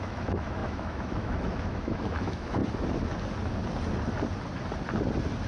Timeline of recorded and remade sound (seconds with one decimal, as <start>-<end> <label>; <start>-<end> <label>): 0.0-2.6 remade; 2.6-5.5 recorded